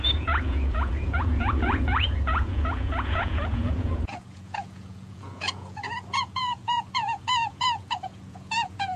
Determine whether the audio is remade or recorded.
remade